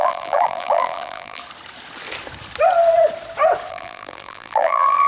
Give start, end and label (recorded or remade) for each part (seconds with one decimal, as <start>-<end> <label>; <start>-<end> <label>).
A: 0.0-1.4 remade; 1.4-3.7 recorded; 3.7-5.1 remade